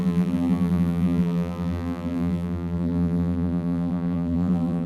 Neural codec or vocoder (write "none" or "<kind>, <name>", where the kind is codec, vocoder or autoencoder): vocoder, BigVGAN v2